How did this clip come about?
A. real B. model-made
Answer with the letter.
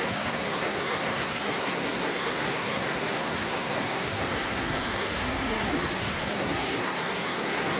B